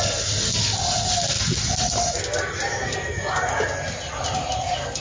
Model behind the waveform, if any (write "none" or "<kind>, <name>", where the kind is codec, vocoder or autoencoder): none